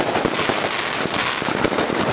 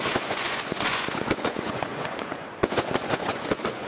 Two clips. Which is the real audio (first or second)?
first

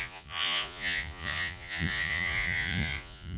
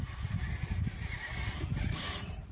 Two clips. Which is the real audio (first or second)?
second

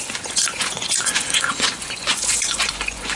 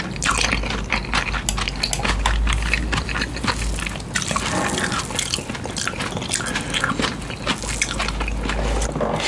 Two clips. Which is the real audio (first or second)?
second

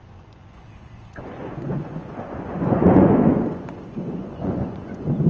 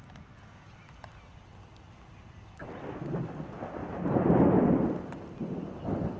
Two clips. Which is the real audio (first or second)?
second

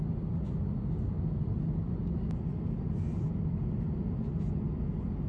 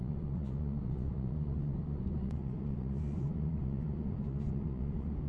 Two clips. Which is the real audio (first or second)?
first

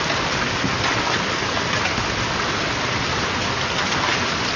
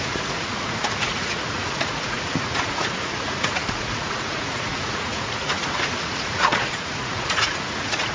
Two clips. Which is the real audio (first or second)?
first